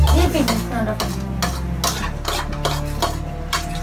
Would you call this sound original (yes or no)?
yes